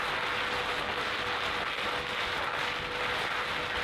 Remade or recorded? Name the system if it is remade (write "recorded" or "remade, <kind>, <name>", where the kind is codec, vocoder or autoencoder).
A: recorded